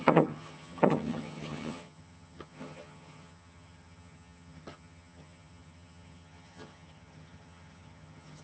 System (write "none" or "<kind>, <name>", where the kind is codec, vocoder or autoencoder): vocoder, HiFi-GAN